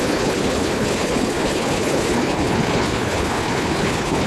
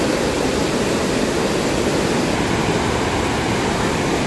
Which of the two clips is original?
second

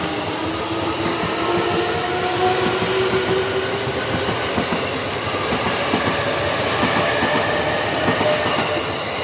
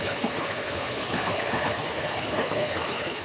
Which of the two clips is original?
first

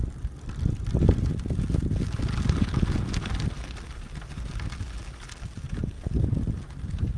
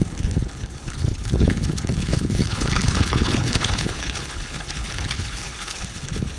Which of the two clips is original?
first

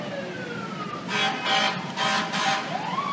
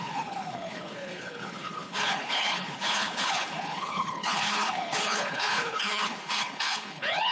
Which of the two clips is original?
first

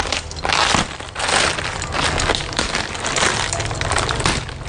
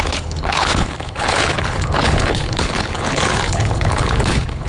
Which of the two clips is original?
first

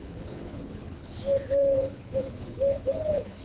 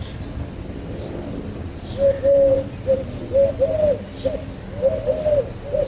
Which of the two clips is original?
second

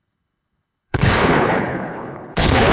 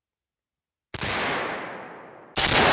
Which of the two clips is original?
second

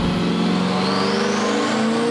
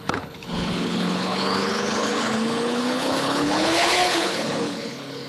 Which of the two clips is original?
first